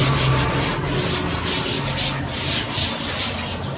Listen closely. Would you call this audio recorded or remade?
recorded